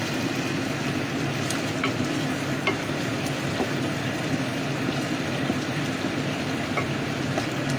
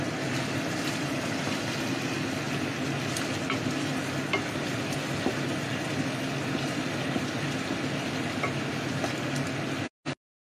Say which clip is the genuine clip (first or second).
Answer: second